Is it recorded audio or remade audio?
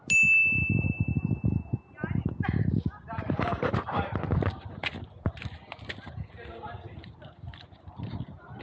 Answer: recorded